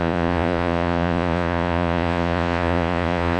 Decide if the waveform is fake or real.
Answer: fake